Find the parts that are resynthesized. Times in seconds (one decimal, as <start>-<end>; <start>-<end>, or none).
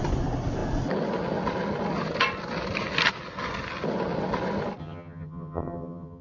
4.8-6.2